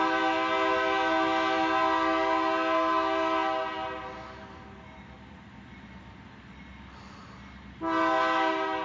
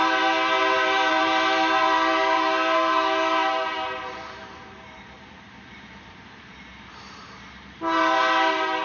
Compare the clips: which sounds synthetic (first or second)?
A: second